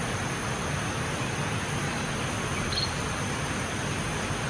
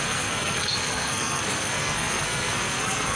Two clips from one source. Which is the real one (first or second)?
first